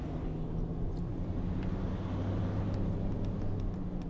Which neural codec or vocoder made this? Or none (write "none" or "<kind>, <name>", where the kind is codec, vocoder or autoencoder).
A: none